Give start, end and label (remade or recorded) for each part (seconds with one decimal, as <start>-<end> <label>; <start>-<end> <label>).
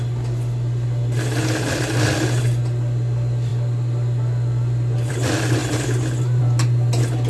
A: 0.0-5.6 recorded; 5.6-6.4 remade; 6.4-7.3 recorded